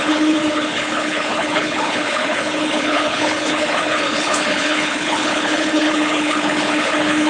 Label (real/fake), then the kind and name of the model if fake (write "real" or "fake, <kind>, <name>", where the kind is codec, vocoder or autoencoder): fake, codec, HILCodec